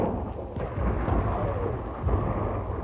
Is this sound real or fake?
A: real